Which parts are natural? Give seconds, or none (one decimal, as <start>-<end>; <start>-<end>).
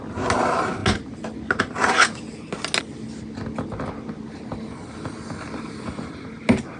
0.0-6.8